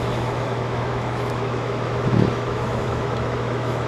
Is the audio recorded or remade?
remade